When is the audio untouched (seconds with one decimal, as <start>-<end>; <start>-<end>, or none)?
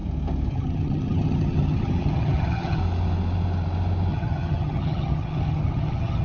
0.0-0.5; 2.8-4.1